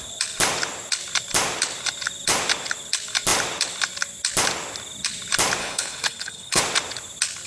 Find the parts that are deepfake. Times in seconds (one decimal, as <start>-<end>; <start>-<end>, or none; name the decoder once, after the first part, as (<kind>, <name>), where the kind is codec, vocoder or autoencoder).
5.6-6.6 (codec, HILCodec)